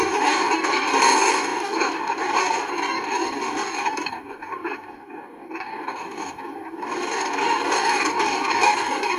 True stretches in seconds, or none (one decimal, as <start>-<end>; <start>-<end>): none